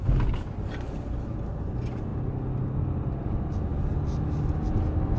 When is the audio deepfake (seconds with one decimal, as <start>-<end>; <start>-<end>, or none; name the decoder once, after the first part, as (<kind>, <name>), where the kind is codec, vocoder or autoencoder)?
none